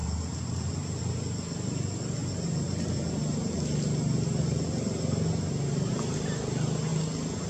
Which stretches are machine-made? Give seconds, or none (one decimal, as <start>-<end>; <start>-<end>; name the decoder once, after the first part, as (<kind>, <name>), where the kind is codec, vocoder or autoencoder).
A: none